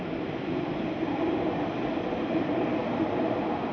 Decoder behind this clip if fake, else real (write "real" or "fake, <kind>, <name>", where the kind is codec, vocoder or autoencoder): real